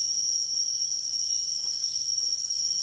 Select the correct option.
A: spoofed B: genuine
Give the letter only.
A